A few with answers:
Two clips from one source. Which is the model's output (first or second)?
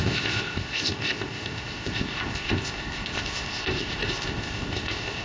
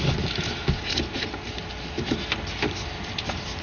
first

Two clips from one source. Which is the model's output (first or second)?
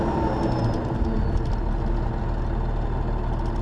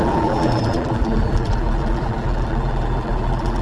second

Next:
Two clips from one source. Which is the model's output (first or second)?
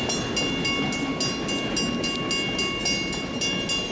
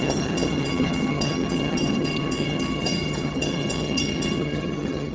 second